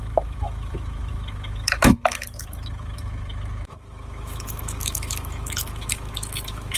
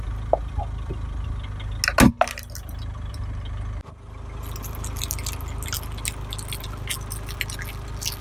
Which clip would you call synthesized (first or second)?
first